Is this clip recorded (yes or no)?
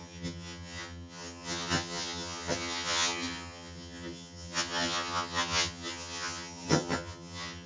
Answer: no